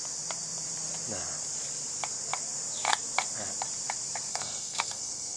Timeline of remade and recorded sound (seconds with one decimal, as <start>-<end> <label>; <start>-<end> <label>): 0.0-4.3 recorded; 4.3-5.4 remade